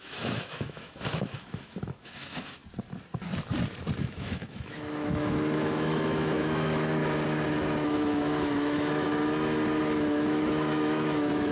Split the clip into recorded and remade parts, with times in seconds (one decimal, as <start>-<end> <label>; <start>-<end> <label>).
0.0-2.6 remade; 2.6-4.0 recorded; 4.0-7.0 remade; 7.0-7.5 recorded; 7.5-9.1 remade; 9.1-9.8 recorded; 9.8-11.5 remade